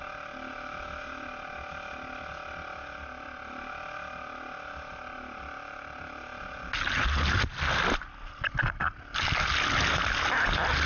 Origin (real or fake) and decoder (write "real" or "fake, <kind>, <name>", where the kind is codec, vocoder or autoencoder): real